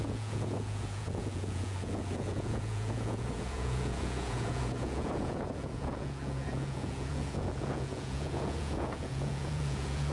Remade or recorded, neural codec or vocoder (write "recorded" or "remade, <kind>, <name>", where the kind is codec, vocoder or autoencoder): remade, vocoder, Vocos